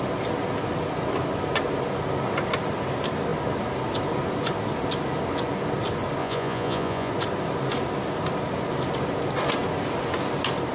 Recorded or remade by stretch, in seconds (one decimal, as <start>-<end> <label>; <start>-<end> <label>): 0.0-6.2 recorded; 6.2-7.1 remade; 7.1-10.7 recorded